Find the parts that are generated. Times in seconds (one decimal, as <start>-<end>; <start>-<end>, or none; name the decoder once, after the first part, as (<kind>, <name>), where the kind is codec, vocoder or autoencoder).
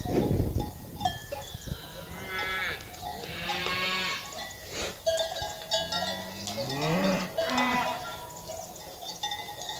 1.2-2.6 (vocoder, BigVGAN v2); 3.1-5.4; 7.7-8.3